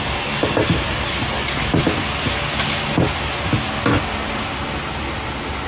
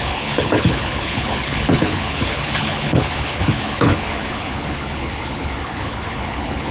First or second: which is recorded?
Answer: first